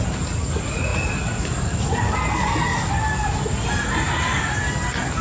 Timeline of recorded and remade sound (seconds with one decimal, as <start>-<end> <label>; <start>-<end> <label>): 0.0-5.2 recorded